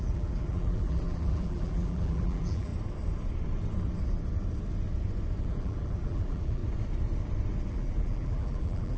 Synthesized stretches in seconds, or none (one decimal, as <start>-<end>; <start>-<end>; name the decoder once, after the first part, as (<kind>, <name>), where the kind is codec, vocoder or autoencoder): 0.0-2.7 (vocoder, BigVGAN v2); 5.4-6.6; 7.7-9.0